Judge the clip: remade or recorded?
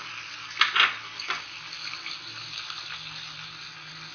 recorded